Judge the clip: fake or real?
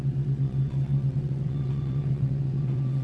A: fake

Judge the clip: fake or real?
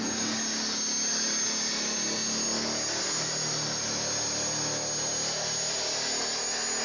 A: real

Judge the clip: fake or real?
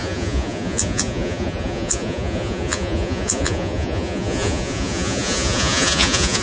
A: fake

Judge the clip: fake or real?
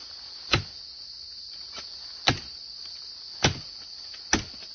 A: real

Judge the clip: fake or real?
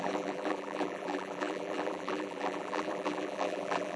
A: fake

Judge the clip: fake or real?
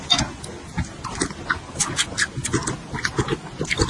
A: real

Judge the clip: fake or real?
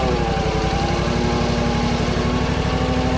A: real